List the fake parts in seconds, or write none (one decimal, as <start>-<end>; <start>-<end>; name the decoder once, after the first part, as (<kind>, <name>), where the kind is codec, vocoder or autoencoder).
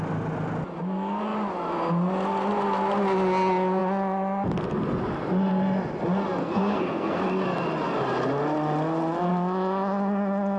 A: 6.4-7.2 (codec, SNAC)